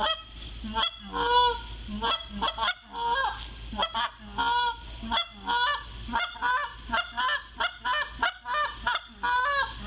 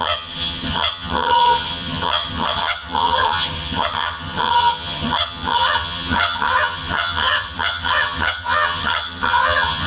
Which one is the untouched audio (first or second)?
first